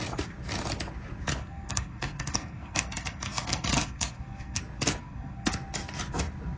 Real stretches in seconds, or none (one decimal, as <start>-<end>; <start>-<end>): 0.0-1.4; 4.6-5.0; 5.5-6.6

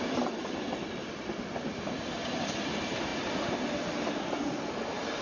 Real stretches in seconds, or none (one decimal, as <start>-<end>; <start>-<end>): 0.0-5.2

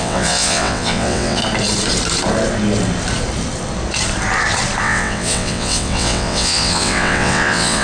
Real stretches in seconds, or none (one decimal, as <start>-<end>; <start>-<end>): 1.4-4.8